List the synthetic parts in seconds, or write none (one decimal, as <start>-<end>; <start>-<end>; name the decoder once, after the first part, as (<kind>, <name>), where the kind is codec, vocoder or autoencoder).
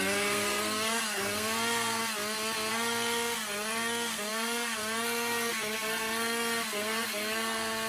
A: 0.0-2.0 (codec, SNAC); 2.7-7.9